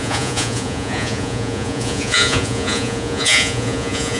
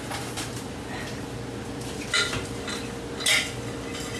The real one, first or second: second